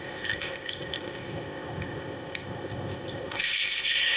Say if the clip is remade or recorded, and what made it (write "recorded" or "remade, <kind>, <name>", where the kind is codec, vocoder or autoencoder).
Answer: remade, codec, ZipCodec